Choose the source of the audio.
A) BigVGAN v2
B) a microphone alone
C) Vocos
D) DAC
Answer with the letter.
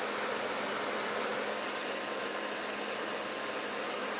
B